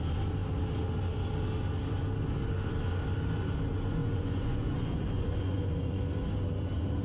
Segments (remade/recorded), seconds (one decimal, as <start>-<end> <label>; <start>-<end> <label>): 0.0-4.0 recorded; 4.0-6.0 remade; 6.0-7.0 recorded